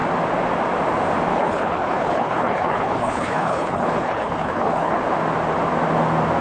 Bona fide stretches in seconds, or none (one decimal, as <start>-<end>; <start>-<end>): 0.0-1.3; 5.0-6.4

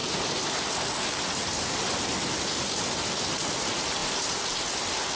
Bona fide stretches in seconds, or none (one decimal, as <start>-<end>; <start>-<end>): 0.0-5.2

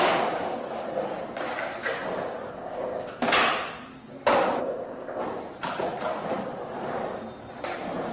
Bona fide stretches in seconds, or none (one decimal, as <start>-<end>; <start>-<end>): 0.0-2.5; 3.2-4.6; 5.2-8.1

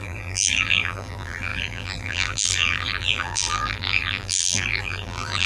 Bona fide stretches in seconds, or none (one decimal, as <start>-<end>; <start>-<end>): none

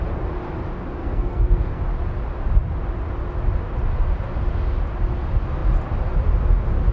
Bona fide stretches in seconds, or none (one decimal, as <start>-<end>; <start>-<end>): 0.0-1.0; 1.8-6.9

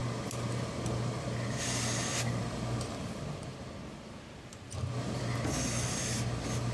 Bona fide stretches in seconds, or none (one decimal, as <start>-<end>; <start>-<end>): 0.0-4.5; 5.2-6.7

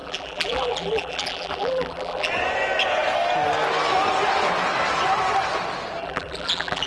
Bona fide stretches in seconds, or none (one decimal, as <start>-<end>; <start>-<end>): 2.3-6.0